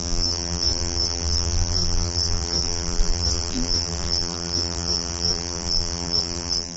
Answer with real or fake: fake